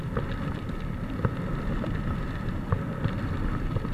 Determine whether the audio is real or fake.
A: real